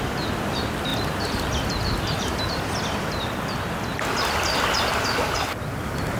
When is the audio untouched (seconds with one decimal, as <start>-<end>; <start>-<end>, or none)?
0.0-0.9; 2.3-6.2